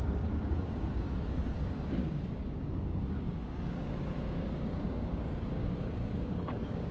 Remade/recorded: remade